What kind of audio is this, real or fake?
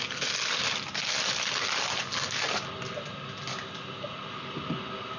real